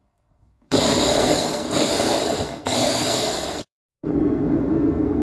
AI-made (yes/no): yes